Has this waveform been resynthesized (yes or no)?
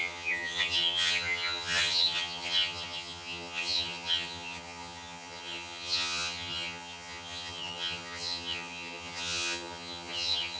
yes